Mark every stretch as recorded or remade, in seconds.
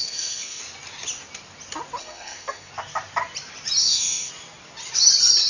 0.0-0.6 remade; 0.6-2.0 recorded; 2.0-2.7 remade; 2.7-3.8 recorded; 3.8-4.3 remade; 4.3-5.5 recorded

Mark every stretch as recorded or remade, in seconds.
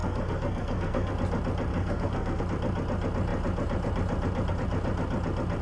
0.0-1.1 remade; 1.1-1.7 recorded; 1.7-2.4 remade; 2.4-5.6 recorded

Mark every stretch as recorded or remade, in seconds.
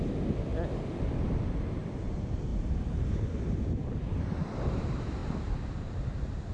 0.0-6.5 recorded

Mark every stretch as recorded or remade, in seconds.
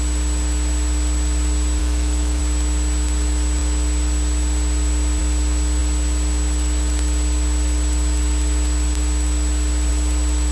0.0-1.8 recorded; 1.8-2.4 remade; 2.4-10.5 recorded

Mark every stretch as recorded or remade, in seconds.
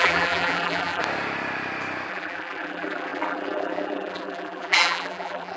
0.0-1.0 remade; 1.0-2.1 recorded; 2.1-5.6 remade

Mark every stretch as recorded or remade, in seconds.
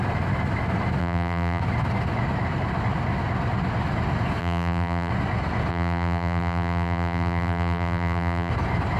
0.0-1.0 recorded; 1.0-1.6 remade; 1.6-4.4 recorded; 4.4-5.1 remade; 5.1-5.7 recorded; 5.7-8.5 remade; 8.5-9.0 recorded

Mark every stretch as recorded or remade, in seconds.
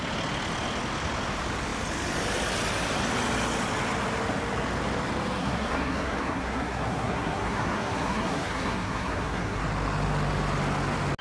0.0-5.4 recorded; 5.4-9.6 remade; 9.6-11.2 recorded